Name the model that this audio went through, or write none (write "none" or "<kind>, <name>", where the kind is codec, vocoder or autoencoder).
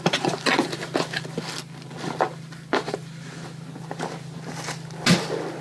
none